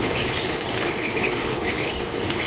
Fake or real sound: fake